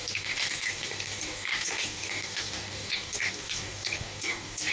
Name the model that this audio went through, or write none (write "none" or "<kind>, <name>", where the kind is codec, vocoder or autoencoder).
codec, DAC